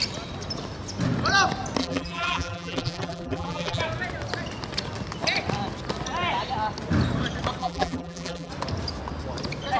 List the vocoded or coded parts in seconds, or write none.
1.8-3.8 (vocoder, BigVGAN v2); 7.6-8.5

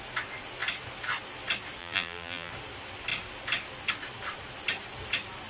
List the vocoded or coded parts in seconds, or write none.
1.8-2.5 (vocoder, BigVGAN v2)

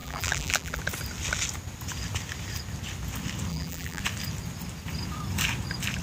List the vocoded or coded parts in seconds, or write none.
0.0-0.8 (vocoder, BigVGAN v2); 3.5-4.0

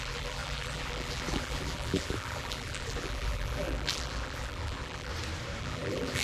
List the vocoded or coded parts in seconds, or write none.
0.0-5.1 (vocoder, BigVGAN v2); 5.6-6.2

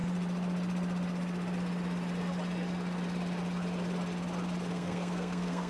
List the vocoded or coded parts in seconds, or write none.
4.7-5.7 (codec, SNAC)

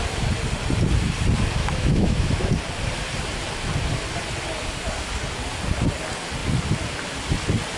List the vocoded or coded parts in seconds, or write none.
1.6-2.5 (autoencoder, DAC-VAE)

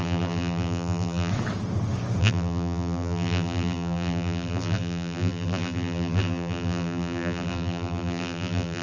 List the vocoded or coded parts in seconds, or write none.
0.0-1.3 (vocoder, BigVGAN v2); 2.2-8.8

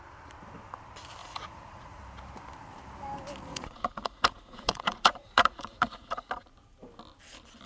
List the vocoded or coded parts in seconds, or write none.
1.2-2.0 (vocoder, Vocos); 3.5-6.3